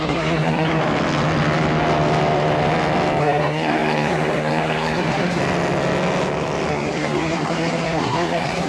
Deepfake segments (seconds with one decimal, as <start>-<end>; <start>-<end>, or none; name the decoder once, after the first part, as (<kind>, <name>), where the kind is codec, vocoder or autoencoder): 0.0-0.8 (codec, SNAC); 3.2-5.4; 6.7-8.7